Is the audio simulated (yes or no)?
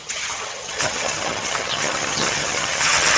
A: yes